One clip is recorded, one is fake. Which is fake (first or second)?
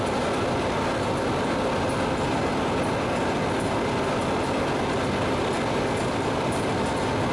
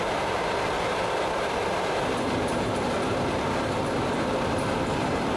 second